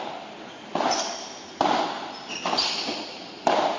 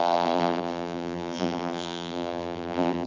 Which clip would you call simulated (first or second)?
second